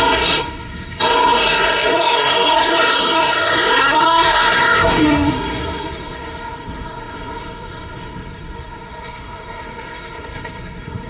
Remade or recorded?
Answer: remade